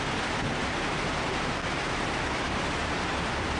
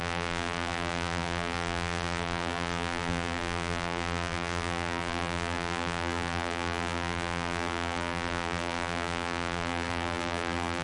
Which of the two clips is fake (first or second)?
second